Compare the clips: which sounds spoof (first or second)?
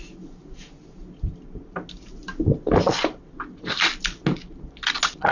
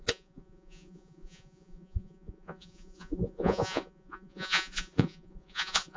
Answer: second